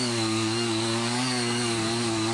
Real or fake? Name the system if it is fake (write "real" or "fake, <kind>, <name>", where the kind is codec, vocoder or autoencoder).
fake, codec, DAC